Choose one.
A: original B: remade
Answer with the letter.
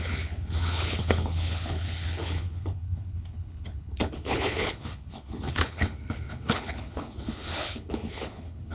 B